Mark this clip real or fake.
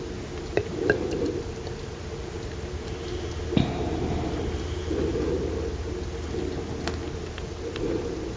real